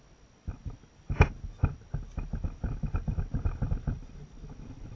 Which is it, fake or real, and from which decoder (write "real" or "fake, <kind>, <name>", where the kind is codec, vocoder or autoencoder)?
real